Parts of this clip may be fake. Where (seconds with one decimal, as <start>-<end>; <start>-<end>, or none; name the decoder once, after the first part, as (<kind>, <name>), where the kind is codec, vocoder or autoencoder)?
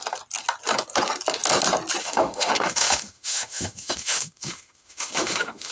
2.0-5.7 (autoencoder, DAC-VAE)